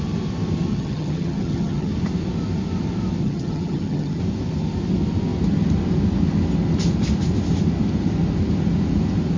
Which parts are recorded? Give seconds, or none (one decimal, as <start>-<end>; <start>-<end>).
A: 0.0-0.7; 1.9-3.2; 4.2-9.4